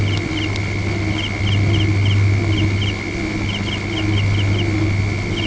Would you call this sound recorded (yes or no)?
yes